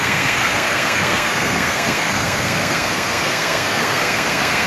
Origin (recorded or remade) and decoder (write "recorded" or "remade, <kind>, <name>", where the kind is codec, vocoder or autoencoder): remade, codec, SNAC